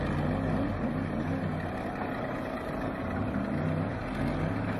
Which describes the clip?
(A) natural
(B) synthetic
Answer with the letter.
A